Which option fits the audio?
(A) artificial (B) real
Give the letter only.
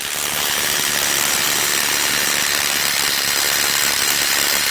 B